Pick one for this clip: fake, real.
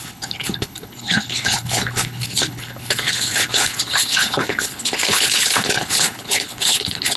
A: fake